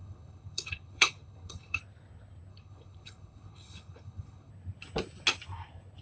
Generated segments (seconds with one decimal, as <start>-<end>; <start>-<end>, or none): 0.0-1.8; 2.5-4.5